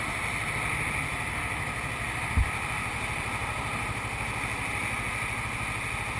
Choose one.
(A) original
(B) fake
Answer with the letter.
A